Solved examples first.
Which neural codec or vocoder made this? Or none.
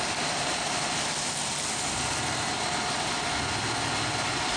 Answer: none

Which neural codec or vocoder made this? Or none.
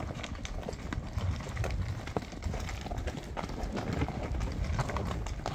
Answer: none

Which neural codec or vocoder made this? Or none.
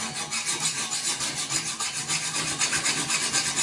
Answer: none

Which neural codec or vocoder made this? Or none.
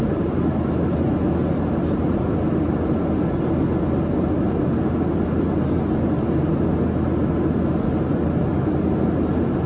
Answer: none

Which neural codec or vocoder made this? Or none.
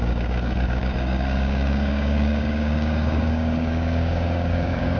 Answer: codec, DAC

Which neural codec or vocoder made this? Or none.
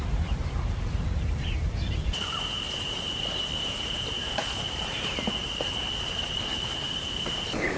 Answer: vocoder, BigVGAN v2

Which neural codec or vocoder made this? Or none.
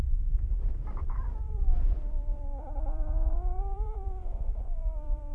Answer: vocoder, BigVGAN v2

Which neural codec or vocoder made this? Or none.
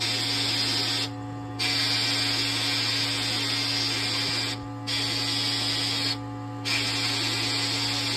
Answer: none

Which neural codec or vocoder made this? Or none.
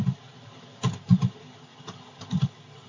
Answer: none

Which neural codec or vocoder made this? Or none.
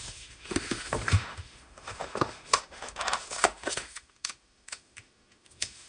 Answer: autoencoder, DAC-VAE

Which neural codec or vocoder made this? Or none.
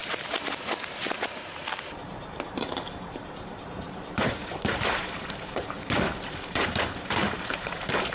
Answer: vocoder, BigVGAN v2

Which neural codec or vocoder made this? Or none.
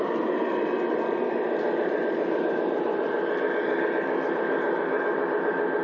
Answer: vocoder, BigVGAN v2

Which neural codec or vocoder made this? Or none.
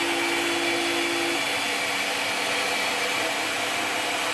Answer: none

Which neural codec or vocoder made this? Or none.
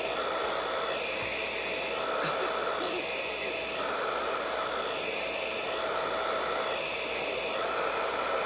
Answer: none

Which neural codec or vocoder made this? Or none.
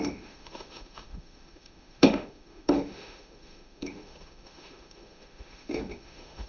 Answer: autoencoder, DAC-VAE